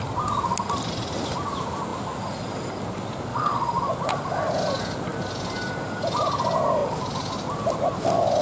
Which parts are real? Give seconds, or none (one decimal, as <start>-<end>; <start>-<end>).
0.0-3.3; 3.8-8.4